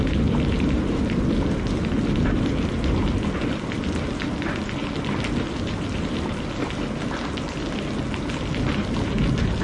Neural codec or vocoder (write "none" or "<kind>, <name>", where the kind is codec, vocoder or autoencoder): none